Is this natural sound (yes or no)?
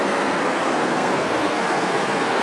no